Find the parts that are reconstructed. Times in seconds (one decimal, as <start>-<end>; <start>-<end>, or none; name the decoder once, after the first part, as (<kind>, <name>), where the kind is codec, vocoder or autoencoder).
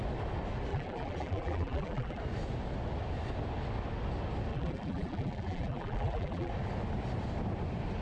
0.7-2.2 (vocoder, BigVGAN v2); 4.5-6.5